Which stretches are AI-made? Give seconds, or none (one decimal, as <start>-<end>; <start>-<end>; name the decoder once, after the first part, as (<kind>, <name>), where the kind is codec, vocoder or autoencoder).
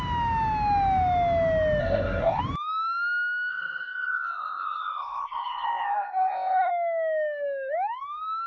1.8-2.4 (codec, SNAC); 3.5-6.7